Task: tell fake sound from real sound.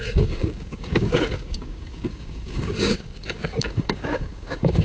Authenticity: fake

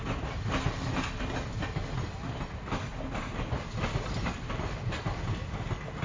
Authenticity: real